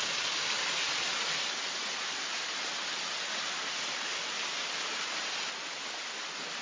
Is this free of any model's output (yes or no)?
yes